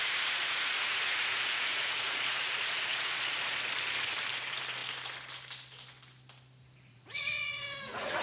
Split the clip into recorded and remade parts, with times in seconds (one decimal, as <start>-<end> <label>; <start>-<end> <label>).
0.0-3.7 remade; 3.7-6.9 recorded; 6.9-8.2 remade